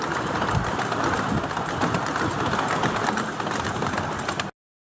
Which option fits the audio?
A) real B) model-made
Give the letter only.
A